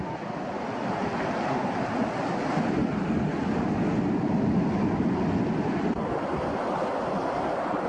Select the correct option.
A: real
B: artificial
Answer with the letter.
A